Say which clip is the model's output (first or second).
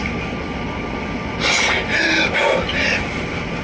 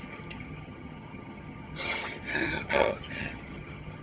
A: second